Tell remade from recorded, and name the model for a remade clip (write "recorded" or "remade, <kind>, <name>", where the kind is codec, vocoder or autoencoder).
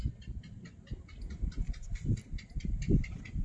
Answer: recorded